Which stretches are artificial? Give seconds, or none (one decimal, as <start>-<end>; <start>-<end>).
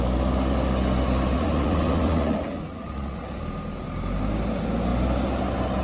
1.3-3.4